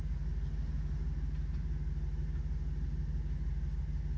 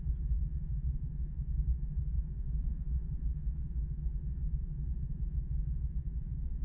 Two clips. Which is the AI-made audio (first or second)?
second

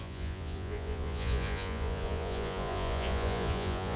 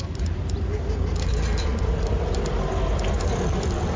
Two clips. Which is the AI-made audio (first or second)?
first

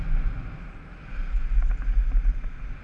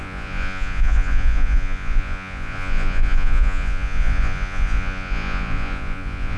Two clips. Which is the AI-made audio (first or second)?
second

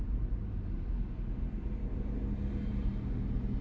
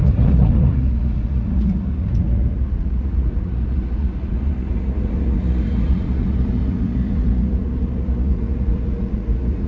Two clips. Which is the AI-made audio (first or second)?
second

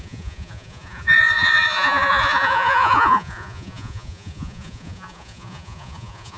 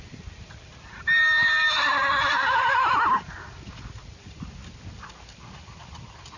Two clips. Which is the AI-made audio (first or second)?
first